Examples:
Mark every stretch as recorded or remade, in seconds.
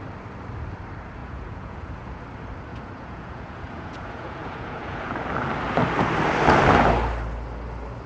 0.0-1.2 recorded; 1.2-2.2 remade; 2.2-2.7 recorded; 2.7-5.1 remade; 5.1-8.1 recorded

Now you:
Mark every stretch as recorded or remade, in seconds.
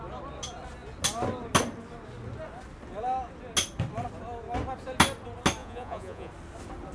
0.0-5.6 recorded; 5.6-6.3 remade; 6.3-6.9 recorded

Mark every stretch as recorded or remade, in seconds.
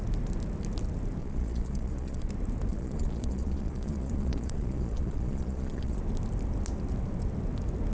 0.0-1.2 recorded; 1.2-2.3 remade; 2.3-2.7 recorded; 2.7-6.0 remade; 6.0-7.9 recorded